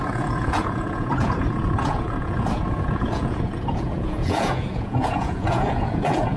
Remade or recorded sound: remade